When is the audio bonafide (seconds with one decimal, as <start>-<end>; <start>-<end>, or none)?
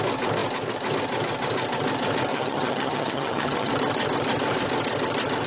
0.0-2.3; 3.7-5.5